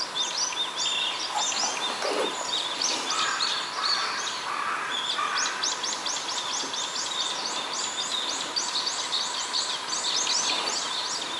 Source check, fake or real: real